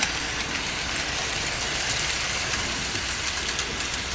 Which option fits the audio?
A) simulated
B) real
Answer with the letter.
A